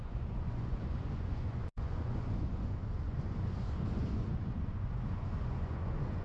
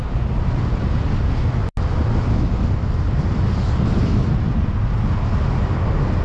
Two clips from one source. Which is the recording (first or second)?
second